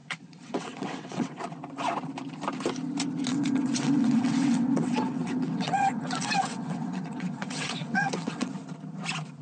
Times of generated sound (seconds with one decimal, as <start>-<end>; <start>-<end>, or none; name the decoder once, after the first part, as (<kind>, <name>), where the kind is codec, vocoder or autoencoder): 0.0-1.4 (vocoder, WaveNeXt); 3.3-8.5